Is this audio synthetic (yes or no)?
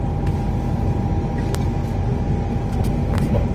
no